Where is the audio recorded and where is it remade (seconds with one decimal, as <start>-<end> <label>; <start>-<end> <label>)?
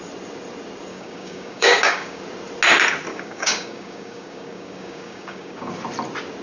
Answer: 0.0-0.9 recorded; 0.9-2.2 remade; 2.2-3.1 recorded; 3.1-5.7 remade; 5.7-6.4 recorded